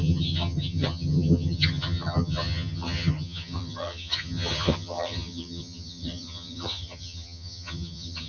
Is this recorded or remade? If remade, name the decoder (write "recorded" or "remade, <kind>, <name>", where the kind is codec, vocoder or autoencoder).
remade, vocoder, HiFi-GAN